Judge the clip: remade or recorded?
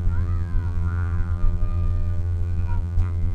remade